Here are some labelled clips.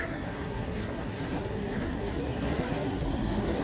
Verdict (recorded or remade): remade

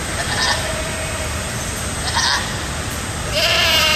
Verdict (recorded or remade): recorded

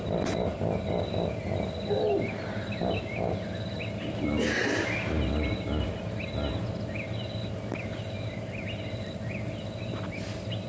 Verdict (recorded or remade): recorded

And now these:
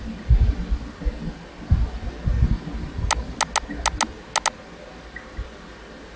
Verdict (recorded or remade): recorded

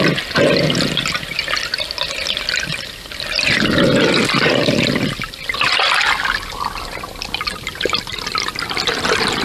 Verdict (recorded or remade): recorded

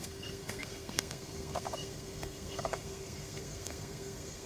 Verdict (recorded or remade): remade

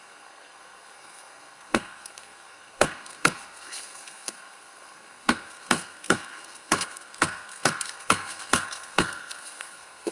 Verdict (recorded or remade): remade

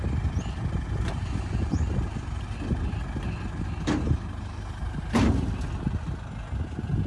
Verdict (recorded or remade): recorded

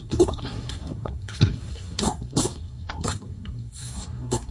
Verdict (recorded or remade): remade